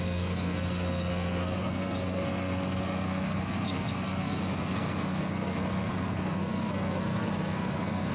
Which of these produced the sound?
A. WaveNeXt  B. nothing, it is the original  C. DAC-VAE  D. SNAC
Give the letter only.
D